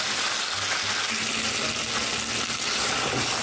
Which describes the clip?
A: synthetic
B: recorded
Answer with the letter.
B